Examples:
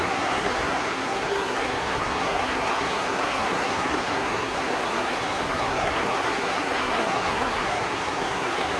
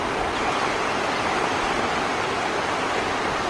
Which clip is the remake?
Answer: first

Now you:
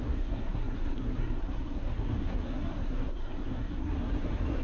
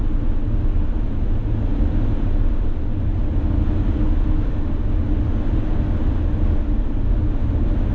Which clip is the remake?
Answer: first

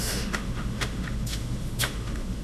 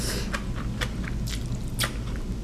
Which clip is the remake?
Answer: first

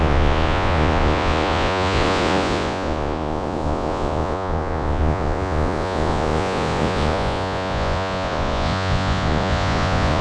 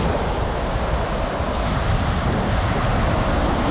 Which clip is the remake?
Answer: first